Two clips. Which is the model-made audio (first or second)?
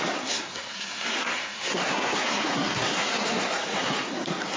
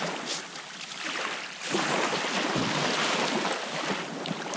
first